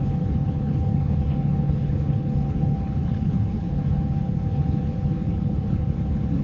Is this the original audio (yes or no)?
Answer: no